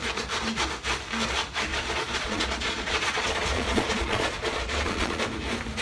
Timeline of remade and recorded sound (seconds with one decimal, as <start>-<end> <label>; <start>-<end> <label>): 0.0-1.7 recorded; 1.7-5.2 remade; 5.2-5.8 recorded